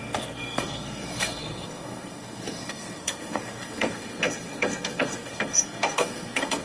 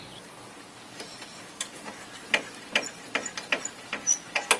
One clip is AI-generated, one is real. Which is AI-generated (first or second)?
first